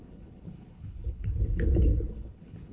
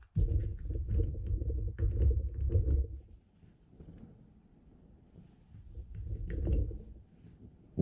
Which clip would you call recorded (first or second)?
second